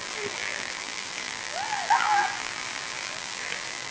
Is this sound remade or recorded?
remade